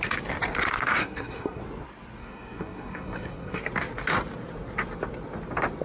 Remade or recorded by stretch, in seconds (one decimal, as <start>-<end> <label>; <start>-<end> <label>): 0.0-1.0 recorded; 1.0-1.6 remade; 1.6-2.2 recorded; 2.2-3.6 remade; 3.6-5.8 recorded

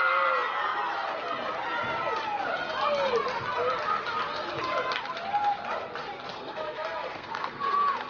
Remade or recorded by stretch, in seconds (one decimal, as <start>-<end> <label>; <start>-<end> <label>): 0.0-6.3 recorded; 6.3-8.1 remade

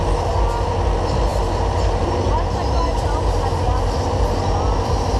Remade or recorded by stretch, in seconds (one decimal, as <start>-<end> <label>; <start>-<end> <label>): 0.0-5.2 recorded

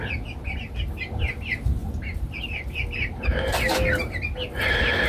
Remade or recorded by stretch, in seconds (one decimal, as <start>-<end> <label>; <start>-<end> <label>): 0.0-5.1 recorded

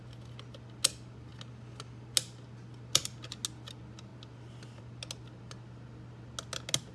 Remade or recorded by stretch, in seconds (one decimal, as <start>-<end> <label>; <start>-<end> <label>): 0.0-6.9 recorded

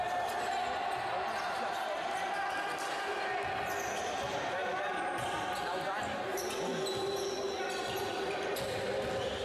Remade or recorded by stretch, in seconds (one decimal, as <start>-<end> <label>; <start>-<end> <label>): 0.0-9.4 recorded

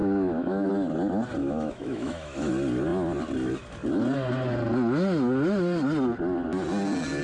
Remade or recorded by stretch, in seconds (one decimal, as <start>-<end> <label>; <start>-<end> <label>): 0.0-0.7 remade; 0.7-1.4 recorded; 1.4-2.5 remade; 2.5-7.2 recorded